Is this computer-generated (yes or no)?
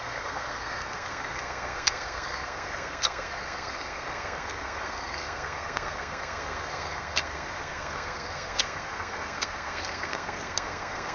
yes